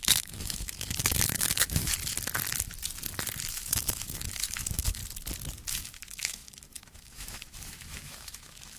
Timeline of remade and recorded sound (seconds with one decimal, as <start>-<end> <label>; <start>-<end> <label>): 0.0-1.9 remade; 1.9-3.5 recorded; 3.5-5.0 remade; 5.0-5.7 recorded; 5.7-8.8 remade